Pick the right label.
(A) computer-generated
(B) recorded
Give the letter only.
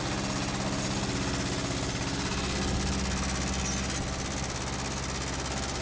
B